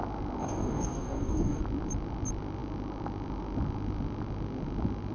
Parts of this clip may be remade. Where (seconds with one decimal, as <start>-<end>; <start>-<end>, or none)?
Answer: 0.4-1.6